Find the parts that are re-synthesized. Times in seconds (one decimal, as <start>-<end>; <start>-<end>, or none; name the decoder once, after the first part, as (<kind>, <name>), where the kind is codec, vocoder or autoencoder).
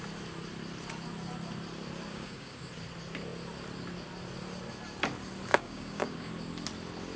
2.1-2.7 (codec, DAC); 5.5-6.3